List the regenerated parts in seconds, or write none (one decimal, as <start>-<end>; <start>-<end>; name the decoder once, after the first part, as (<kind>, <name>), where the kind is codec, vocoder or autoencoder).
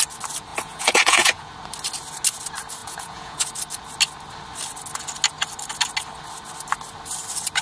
0.5-1.5 (vocoder, Vocos); 2.8-3.5